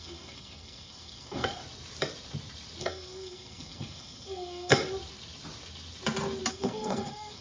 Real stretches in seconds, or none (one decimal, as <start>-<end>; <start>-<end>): 1.6-2.8; 4.8-6.5